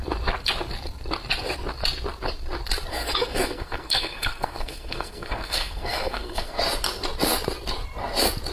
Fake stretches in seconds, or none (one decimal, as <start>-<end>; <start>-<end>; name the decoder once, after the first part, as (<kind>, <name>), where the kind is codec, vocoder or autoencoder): 2.9-6.6 (codec, SNAC)

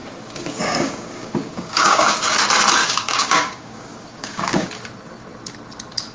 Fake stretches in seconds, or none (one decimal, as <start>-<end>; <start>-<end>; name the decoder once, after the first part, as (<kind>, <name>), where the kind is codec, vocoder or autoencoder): 0.0-2.4 (codec, DAC); 2.8-4.7

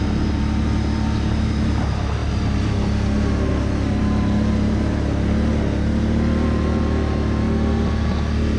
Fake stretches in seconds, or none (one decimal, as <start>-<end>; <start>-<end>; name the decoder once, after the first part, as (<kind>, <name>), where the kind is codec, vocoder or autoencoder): none